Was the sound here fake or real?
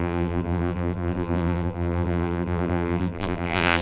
fake